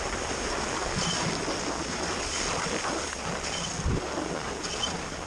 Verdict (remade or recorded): recorded